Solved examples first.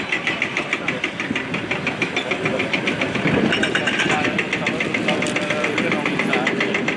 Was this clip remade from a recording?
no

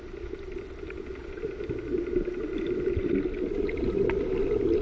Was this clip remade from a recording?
no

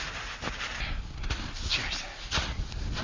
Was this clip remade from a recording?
no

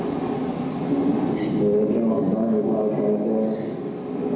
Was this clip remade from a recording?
no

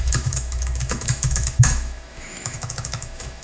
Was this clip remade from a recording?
yes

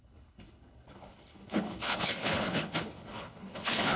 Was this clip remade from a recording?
yes